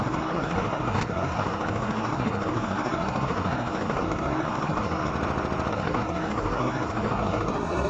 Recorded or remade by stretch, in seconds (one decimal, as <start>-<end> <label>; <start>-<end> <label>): 0.0-5.1 remade; 5.1-5.7 recorded; 5.7-7.9 remade

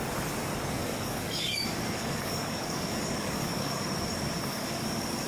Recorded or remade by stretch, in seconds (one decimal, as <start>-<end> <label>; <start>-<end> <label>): 0.0-0.8 recorded; 0.8-4.0 remade; 4.0-4.5 recorded; 4.5-5.3 remade